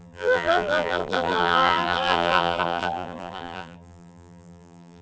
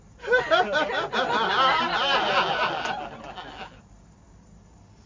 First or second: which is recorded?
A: second